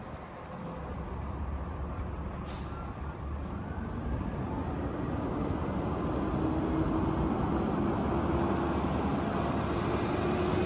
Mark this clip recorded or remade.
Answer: recorded